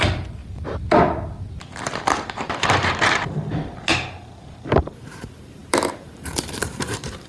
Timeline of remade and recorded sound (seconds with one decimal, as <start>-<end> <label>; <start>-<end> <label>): 0.0-0.4 remade; 0.4-1.8 recorded; 1.8-7.3 remade